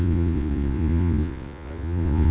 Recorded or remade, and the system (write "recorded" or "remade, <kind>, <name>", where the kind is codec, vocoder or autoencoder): remade, vocoder, Vocos